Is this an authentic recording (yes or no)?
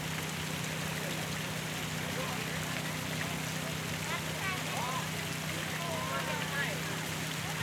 yes